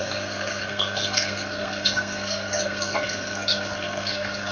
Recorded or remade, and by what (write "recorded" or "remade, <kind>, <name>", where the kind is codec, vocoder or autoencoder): remade, codec, SNAC